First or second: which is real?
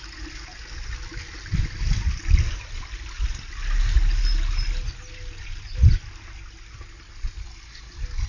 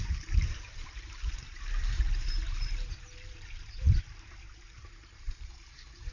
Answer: first